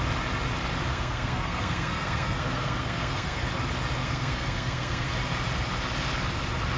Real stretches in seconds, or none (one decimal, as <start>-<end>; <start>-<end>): 0.0-0.9; 3.4-4.0; 5.1-6.8